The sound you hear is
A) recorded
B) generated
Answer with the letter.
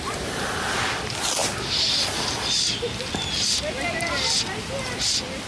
A